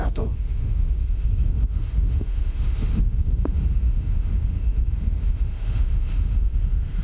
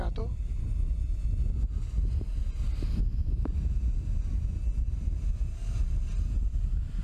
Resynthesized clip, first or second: first